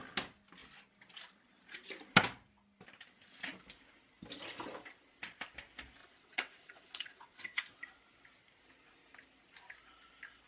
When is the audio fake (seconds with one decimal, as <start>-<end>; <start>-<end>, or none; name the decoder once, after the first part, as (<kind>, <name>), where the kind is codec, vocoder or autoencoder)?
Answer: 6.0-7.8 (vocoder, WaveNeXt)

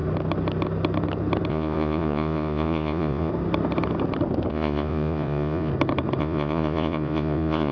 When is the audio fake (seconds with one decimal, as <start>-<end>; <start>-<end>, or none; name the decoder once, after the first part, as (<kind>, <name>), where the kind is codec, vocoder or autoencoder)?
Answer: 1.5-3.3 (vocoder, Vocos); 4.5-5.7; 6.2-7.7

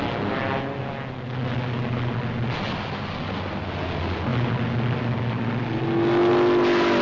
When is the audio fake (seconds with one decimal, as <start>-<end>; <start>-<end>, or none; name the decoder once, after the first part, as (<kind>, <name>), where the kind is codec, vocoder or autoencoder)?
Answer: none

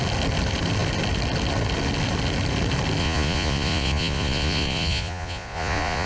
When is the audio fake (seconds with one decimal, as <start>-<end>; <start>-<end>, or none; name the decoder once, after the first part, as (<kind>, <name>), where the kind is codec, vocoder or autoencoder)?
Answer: 3.0-6.1 (vocoder, Vocos)

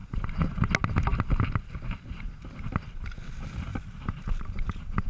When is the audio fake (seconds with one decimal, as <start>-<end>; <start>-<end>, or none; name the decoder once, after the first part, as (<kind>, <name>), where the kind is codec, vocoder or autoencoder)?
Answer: 3.7-5.1 (vocoder, BigVGAN v2)

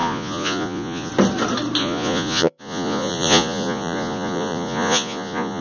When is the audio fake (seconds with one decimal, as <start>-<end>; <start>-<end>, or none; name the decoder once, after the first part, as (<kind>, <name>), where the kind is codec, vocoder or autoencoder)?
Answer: 0.0-1.1 (vocoder, Vocos); 1.8-5.6